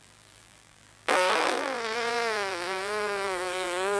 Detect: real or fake fake